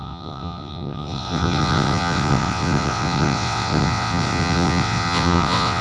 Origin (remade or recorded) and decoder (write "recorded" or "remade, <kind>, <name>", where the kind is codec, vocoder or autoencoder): remade, vocoder, WaveNeXt